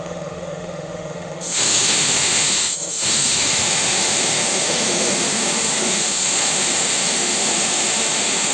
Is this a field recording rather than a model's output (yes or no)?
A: no